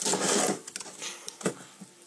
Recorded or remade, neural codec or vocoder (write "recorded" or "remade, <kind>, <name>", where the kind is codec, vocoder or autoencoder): remade, vocoder, BigVGAN v2